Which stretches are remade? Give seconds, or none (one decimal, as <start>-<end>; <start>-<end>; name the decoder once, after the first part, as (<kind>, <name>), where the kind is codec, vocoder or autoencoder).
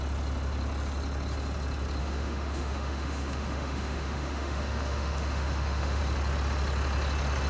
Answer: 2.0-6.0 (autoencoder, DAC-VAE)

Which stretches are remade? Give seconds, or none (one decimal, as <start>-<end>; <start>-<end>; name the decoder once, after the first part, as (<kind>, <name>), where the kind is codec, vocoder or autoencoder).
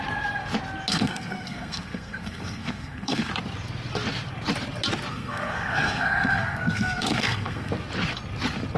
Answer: 0.9-3.3 (codec, SNAC); 5.1-7.7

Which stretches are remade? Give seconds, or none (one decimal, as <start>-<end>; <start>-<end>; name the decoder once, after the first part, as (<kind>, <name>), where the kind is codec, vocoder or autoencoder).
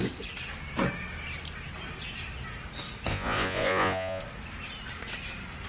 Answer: 3.1-4.2 (vocoder, Vocos)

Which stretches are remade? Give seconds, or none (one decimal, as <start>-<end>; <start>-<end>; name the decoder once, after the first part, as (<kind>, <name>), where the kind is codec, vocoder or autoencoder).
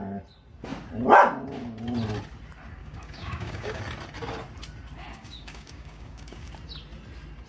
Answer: 2.8-3.8 (codec, DAC); 5.1-6.5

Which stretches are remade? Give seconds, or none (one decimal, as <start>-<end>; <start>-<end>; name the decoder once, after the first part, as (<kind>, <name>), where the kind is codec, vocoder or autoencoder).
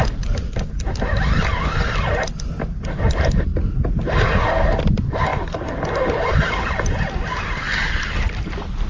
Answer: none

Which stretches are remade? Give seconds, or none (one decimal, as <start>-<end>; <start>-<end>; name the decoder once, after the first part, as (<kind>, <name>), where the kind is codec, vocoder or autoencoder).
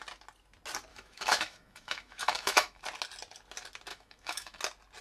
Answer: 0.9-2.8 (autoencoder, DAC-VAE); 3.9-4.6